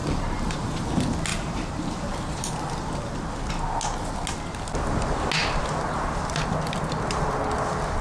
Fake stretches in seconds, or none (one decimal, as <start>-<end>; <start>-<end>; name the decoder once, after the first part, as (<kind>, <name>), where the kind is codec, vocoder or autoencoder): 0.0-0.7 (vocoder, BigVGAN v2); 1.3-3.3